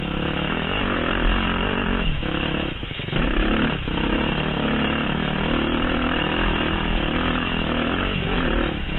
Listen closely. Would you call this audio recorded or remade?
remade